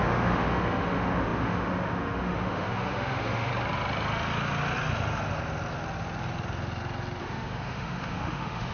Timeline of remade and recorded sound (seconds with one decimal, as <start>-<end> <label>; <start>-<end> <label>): 0.0-3.5 remade; 3.5-7.2 recorded; 7.2-8.7 remade